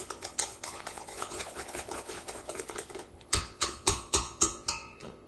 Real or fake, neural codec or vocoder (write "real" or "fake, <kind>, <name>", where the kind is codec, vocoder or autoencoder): fake, vocoder, Vocos